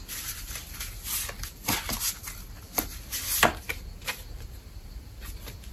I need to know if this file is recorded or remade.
remade